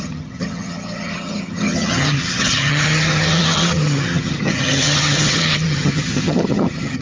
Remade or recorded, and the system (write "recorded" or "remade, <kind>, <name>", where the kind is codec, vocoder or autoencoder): remade, vocoder, HiFi-GAN